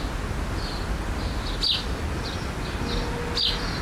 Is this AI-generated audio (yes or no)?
no